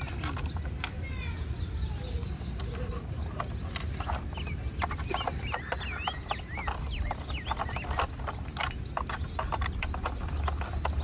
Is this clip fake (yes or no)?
no